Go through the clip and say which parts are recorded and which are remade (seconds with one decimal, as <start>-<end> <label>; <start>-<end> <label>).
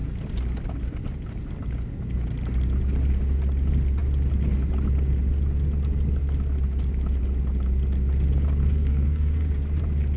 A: 0.0-8.6 recorded; 8.6-9.5 remade; 9.5-10.2 recorded